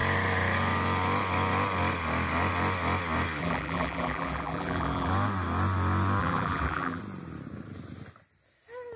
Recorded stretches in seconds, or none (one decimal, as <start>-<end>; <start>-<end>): 0.0-3.4; 5.1-6.2; 7.0-9.0